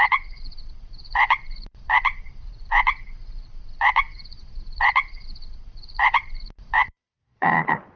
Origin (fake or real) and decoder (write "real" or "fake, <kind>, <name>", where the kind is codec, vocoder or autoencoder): fake, vocoder, Vocos